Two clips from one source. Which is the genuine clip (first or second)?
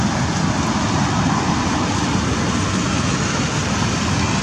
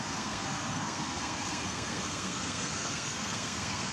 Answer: first